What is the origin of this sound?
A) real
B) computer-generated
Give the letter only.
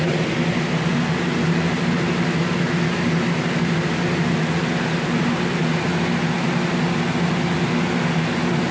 A